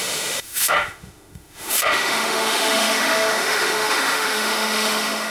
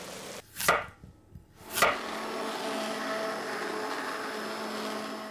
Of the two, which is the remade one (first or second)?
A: first